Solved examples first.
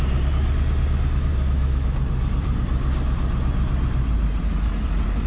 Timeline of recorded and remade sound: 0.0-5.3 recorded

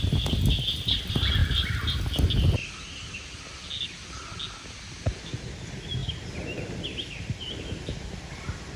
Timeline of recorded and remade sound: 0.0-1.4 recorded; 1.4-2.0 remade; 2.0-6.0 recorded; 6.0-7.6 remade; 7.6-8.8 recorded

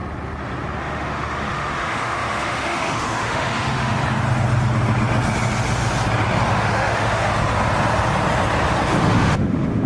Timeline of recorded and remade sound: 0.0-0.8 recorded; 0.8-4.0 remade; 4.0-6.5 recorded; 6.5-7.3 remade; 7.3-9.0 recorded; 9.0-9.9 remade